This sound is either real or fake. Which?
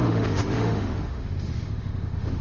fake